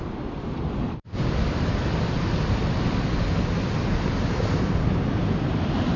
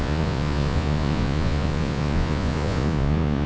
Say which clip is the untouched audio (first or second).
first